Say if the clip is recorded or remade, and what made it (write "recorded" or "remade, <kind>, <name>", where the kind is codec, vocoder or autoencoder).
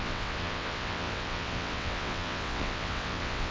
remade, vocoder, WaveNeXt